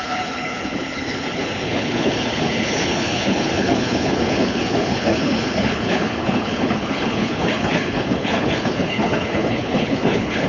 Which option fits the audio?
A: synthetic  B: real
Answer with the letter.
A